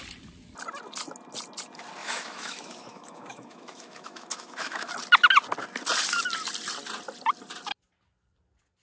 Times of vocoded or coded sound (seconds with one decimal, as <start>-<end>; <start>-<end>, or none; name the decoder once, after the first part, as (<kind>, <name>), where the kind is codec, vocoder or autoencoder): 2.0-4.9 (autoencoder, DAC-VAE)